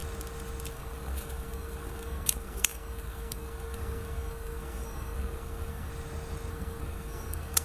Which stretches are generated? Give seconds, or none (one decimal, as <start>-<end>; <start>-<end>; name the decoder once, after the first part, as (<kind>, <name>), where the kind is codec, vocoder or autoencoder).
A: 0.7-5.9 (codec, SNAC); 6.5-7.6

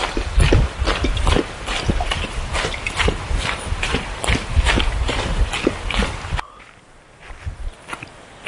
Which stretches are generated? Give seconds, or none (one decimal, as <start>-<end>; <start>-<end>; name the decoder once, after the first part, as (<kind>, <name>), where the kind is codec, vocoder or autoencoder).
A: 3.2-5.4 (vocoder, BigVGAN v2)

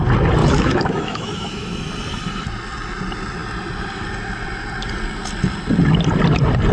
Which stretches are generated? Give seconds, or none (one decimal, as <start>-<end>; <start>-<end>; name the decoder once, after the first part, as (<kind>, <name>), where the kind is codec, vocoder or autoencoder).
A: 0.4-1.7 (autoencoder, DAC-VAE)

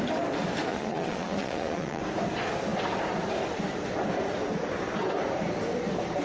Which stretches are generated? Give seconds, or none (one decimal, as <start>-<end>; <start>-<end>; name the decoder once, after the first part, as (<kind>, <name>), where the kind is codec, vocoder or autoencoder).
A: 0.7-2.0 (vocoder, Vocos)

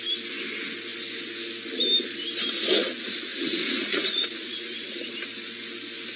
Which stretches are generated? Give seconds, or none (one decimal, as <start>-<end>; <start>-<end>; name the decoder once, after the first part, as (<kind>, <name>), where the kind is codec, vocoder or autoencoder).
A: 3.3-5.1 (vocoder, Vocos)

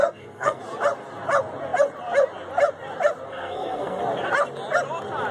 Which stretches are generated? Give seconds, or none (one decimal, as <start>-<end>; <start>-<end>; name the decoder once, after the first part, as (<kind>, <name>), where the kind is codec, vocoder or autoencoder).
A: 0.0-0.6 (codec, SNAC); 3.3-4.0